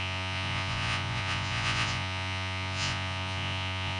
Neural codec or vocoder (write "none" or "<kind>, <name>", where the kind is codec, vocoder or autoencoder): vocoder, Vocos